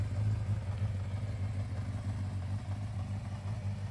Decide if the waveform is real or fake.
real